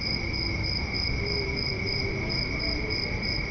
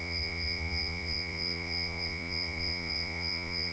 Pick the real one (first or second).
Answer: first